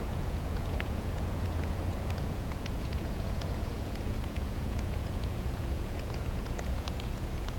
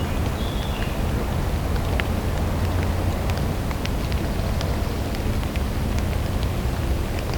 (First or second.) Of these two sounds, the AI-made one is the first